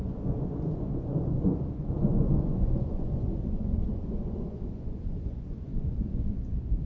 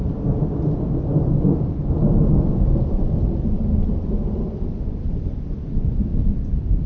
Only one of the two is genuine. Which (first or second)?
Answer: second